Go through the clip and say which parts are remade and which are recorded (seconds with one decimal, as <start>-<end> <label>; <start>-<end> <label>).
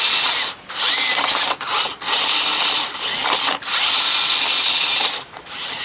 0.0-1.7 remade; 1.7-5.2 recorded; 5.2-5.8 remade